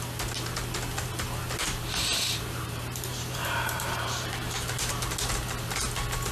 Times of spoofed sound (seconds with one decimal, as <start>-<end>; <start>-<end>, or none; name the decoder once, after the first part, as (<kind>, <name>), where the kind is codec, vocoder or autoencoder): 1.6-4.9 (vocoder, BigVGAN v2)